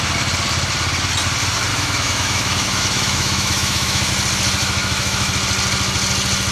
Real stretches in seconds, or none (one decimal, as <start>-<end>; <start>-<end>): 0.0-1.7; 4.1-4.6; 5.3-6.5